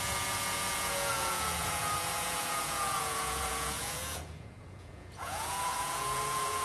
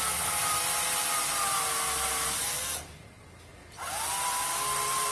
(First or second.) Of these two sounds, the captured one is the second